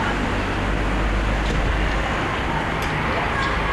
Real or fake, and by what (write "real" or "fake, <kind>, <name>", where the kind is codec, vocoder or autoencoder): real